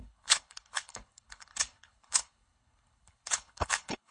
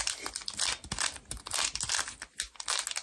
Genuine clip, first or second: second